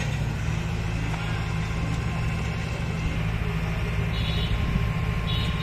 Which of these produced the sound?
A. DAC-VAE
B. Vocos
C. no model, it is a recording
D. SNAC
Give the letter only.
C